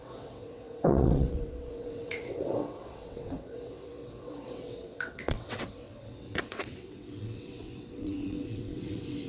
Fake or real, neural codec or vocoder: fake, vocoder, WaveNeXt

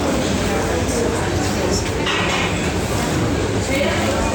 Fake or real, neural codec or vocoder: real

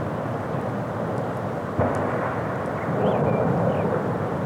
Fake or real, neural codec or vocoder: real